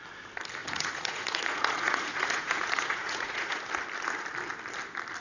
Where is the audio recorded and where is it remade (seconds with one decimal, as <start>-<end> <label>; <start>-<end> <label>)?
0.0-0.6 recorded; 0.6-3.6 remade; 3.6-5.2 recorded